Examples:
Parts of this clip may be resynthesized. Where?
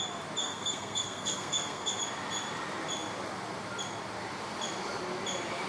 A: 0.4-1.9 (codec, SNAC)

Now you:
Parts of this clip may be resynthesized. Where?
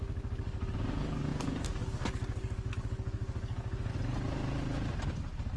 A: 0.0-3.9 (codec, DAC)